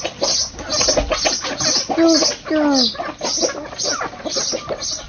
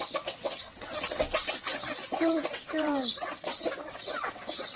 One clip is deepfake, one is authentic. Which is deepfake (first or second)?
second